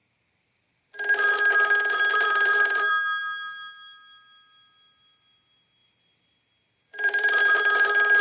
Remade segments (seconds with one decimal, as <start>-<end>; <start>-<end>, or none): 0.0-1.4; 2.1-2.9; 5.8-7.4